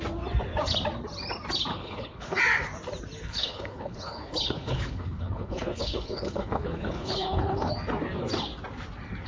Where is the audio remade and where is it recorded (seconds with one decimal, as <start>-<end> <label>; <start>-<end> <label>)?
0.0-1.7 recorded; 1.7-2.4 remade; 2.4-3.2 recorded; 3.2-7.7 remade; 7.7-9.3 recorded